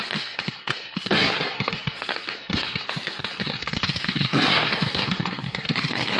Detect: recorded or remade remade